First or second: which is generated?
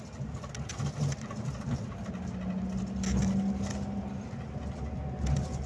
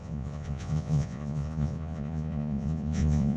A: second